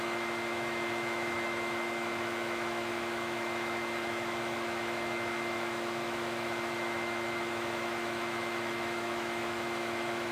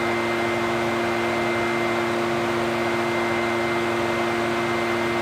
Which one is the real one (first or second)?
second